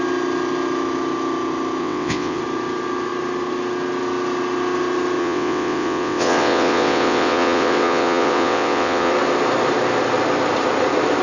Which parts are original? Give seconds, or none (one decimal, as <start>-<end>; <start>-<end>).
0.0-1.8; 2.4-5.2; 9.1-11.2